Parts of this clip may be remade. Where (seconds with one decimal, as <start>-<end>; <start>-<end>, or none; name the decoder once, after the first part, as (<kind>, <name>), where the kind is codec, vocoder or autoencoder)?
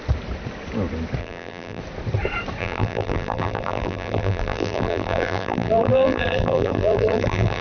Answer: 1.2-1.8 (vocoder, BigVGAN v2); 2.6-7.6